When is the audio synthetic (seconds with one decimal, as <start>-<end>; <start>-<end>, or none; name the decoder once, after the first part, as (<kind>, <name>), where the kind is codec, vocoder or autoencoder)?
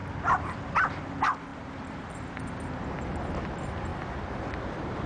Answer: 1.5-3.0 (vocoder, BigVGAN v2); 3.9-5.1